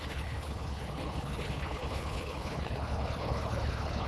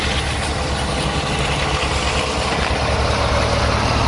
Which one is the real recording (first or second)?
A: second